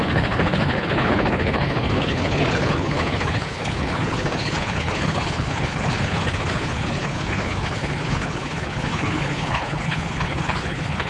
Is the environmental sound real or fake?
fake